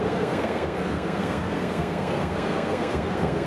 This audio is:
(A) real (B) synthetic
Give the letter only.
B